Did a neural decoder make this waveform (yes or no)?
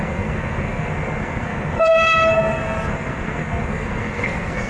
yes